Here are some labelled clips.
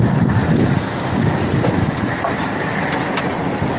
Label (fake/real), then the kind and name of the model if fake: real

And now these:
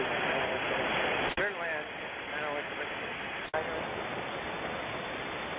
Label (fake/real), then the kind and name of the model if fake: real